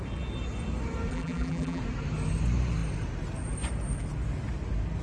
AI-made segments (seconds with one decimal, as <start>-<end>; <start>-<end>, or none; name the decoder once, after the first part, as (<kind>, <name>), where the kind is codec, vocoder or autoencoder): 1.1-1.8 (vocoder, BigVGAN v2)